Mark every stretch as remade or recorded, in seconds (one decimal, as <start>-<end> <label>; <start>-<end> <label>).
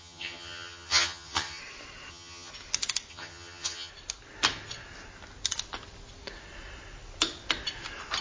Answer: 0.0-1.6 remade; 1.6-2.1 recorded; 2.1-2.5 remade; 2.5-3.1 recorded; 3.1-3.9 remade; 3.9-8.2 recorded